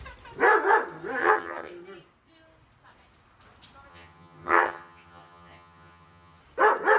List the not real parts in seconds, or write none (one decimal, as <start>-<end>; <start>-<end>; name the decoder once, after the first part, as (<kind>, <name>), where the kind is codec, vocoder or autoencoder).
1.2-1.7 (vocoder, HiFi-GAN); 3.9-6.4